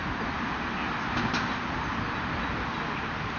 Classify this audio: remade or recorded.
recorded